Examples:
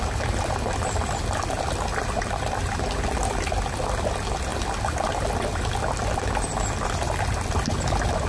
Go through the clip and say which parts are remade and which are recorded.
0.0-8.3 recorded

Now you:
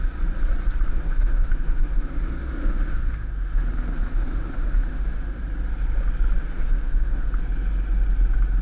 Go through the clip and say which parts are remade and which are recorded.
0.0-0.9 recorded; 0.9-5.4 remade; 5.4-6.4 recorded; 6.4-7.3 remade; 7.3-8.6 recorded

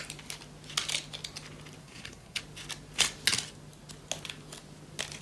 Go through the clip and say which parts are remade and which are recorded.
0.0-1.8 recorded; 1.8-2.4 remade; 2.4-5.2 recorded

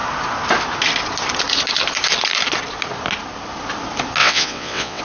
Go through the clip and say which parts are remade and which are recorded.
0.0-4.2 recorded; 4.2-5.0 remade

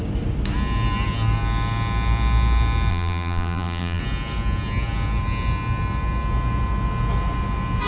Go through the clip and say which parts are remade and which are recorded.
0.0-2.9 recorded; 2.9-4.0 remade; 4.0-7.9 recorded

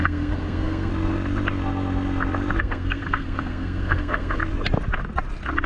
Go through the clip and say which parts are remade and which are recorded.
0.0-0.9 remade; 0.9-2.6 recorded; 2.6-4.4 remade; 4.4-5.7 recorded

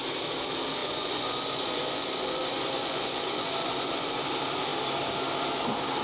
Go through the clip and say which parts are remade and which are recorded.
0.0-0.8 recorded; 0.8-4.2 remade; 4.2-6.0 recorded

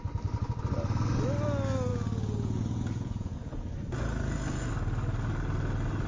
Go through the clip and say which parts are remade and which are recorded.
0.0-1.9 recorded; 1.9-3.6 remade; 3.6-6.1 recorded